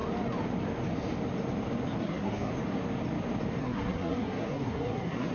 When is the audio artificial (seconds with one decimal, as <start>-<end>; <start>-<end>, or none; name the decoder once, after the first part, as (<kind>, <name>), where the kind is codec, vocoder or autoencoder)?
2.0-2.5 (codec, SNAC); 3.6-5.3